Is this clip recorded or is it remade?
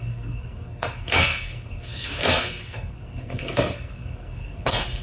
remade